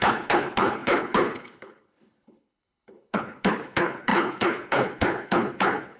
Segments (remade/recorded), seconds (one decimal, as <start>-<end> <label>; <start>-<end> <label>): 0.0-6.0 remade